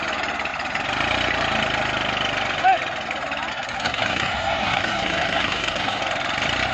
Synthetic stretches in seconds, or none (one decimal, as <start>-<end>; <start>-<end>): 3.5-6.0